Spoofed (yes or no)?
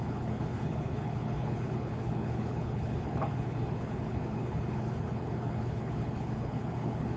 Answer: yes